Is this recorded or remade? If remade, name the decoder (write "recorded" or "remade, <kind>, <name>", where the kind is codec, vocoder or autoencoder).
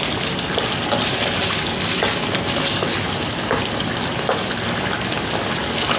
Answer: recorded